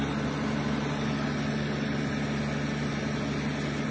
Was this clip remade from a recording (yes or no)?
no